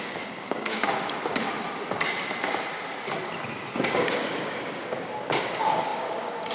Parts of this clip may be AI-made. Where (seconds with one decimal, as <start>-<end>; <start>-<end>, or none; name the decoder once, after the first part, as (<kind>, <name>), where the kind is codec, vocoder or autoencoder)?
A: 0.0-0.8 (codec, DAC); 3.8-6.5